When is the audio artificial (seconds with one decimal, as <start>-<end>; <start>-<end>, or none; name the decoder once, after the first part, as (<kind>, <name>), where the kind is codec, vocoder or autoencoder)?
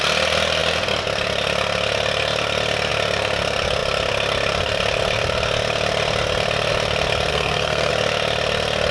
7.3-7.9 (codec, SNAC)